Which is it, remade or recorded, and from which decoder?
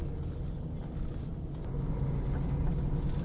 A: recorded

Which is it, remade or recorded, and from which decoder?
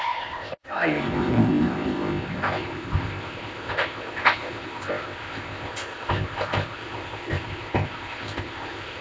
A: remade, codec, ZipCodec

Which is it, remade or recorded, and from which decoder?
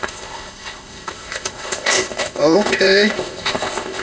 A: remade, codec, ZipCodec